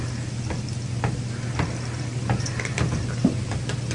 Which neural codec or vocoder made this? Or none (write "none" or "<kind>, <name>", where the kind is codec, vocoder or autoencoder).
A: none